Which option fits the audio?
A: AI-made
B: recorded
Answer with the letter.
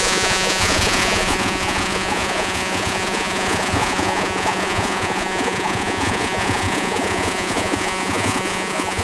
A